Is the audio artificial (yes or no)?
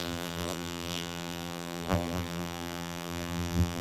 yes